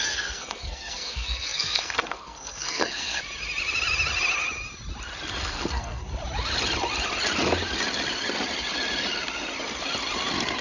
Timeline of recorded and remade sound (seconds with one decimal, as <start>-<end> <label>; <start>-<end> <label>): 0.0-3.2 remade; 3.2-5.4 recorded; 5.4-6.0 remade; 6.0-10.6 recorded